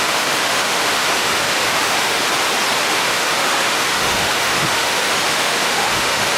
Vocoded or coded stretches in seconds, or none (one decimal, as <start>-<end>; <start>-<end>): 0.0-2.2; 2.8-6.4